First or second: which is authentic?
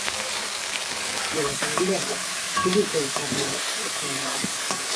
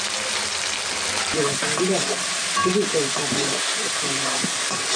second